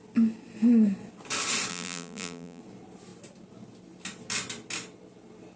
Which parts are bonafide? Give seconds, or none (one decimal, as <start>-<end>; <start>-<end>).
0.0-1.7; 2.6-5.6